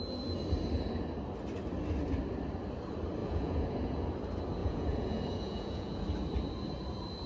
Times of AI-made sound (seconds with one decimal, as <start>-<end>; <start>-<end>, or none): 3.2-4.1; 4.6-6.0